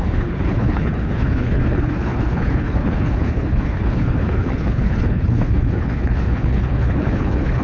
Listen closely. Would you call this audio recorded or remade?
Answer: remade